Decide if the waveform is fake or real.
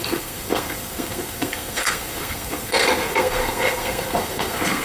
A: fake